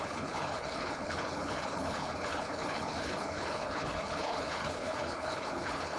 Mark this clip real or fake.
fake